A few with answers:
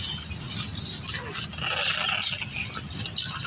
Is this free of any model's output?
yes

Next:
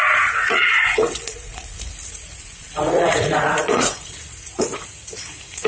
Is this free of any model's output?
no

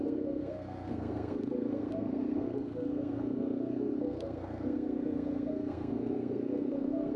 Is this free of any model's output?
no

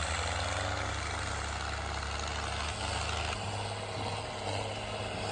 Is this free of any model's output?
yes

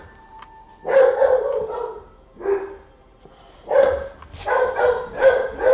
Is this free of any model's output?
no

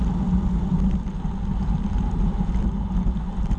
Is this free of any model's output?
yes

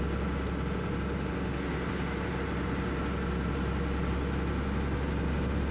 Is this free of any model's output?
yes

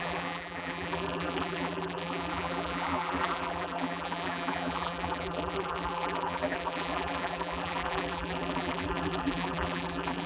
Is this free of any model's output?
no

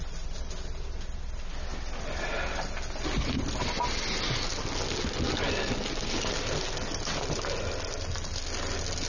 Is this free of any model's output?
yes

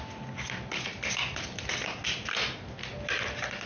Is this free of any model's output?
yes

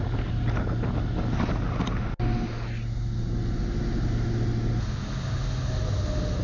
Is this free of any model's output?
yes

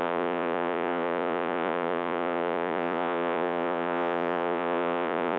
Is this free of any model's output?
no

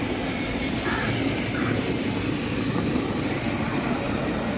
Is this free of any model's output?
no